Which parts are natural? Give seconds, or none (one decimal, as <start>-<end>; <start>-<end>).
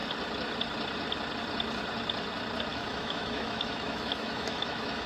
0.0-2.7